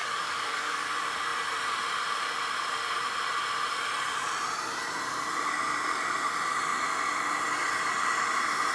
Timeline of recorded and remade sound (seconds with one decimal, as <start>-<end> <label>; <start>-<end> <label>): 0.0-0.9 remade; 0.9-8.7 recorded